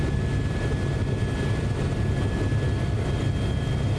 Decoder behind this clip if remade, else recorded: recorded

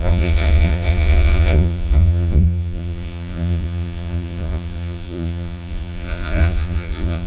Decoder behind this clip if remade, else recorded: remade, vocoder, Vocos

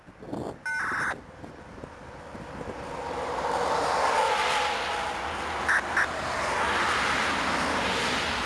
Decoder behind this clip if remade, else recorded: recorded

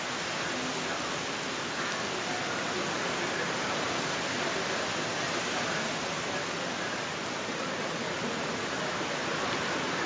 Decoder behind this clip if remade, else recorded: recorded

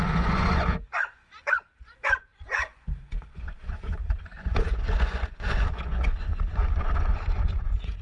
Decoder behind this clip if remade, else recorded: remade, vocoder, Vocos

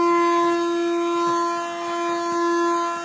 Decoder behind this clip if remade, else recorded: recorded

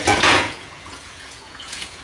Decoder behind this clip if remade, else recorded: remade, vocoder, Vocos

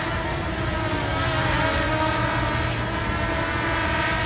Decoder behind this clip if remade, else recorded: recorded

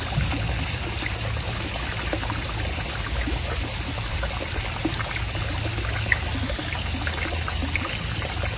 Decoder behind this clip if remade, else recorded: recorded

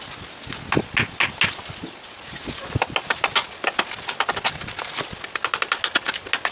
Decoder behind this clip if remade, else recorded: recorded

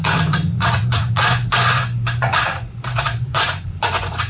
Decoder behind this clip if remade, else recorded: remade, vocoder, Vocos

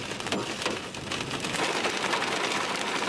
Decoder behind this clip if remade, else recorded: recorded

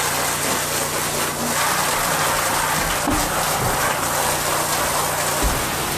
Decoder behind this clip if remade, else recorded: recorded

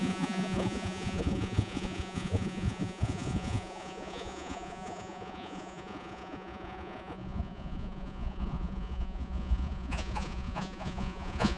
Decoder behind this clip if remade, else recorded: remade, vocoder, Vocos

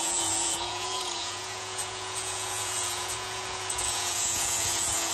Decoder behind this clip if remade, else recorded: remade, vocoder, Vocos